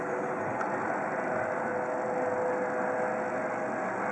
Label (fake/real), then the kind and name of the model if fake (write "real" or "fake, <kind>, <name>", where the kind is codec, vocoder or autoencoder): real